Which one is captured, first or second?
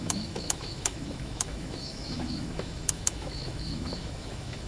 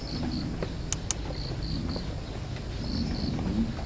second